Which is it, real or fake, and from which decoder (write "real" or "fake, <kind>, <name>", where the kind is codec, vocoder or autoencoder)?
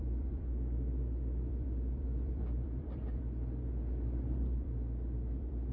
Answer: fake, vocoder, BigVGAN v2